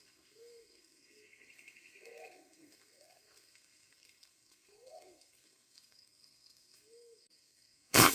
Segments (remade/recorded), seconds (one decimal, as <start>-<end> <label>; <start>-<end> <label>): 0.0-8.1 remade